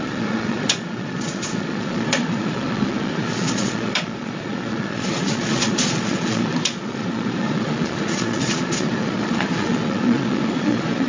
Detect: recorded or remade remade